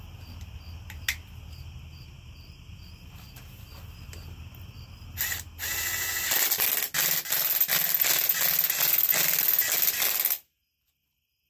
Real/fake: real